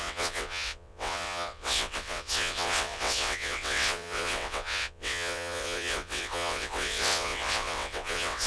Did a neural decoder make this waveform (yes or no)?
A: yes